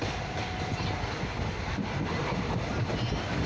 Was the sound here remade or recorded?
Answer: recorded